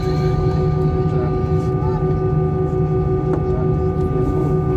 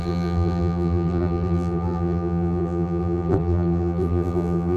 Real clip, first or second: first